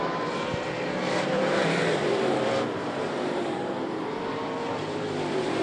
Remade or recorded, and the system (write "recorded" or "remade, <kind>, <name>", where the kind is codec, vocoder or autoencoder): remade, vocoder, BigVGAN v2